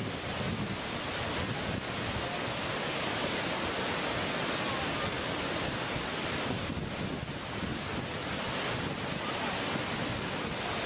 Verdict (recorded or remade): recorded